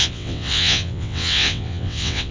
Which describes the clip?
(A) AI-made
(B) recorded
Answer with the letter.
A